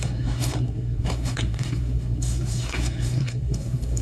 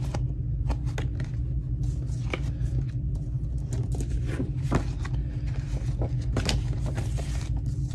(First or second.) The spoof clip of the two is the first